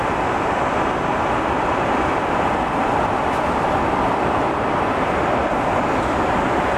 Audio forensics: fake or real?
real